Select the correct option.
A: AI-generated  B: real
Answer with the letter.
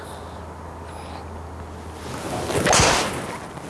B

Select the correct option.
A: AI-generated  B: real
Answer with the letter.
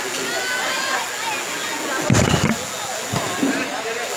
B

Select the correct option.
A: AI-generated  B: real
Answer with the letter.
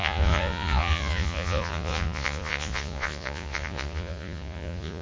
A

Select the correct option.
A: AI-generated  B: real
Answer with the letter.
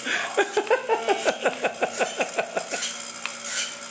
B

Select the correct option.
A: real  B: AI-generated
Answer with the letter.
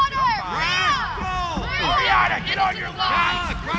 A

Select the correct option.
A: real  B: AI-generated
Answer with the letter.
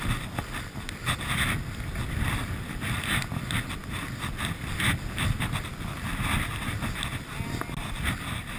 A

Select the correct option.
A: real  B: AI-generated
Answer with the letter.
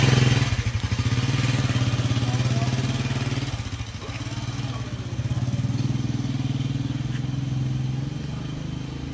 A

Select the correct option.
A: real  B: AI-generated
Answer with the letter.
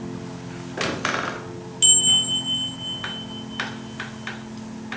A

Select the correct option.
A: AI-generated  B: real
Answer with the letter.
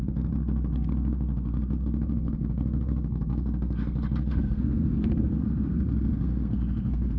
A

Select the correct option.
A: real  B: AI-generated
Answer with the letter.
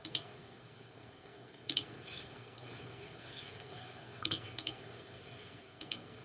B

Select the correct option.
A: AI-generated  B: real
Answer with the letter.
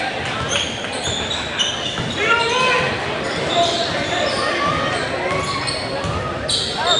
B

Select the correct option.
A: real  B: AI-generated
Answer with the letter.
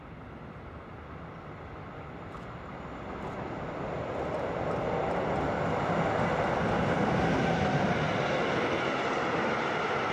A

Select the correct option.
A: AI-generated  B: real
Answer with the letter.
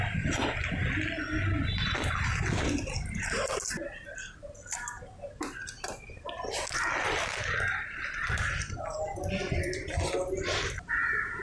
B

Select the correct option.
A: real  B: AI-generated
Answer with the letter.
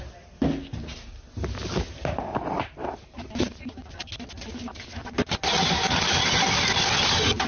A